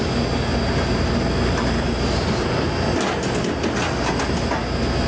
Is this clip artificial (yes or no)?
no